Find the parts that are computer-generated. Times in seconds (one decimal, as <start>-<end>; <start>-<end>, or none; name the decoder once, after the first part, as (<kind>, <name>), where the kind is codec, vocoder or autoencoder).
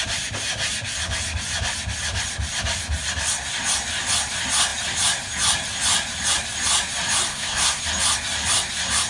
7.3-7.8 (codec, SNAC)